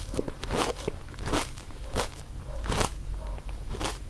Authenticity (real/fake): fake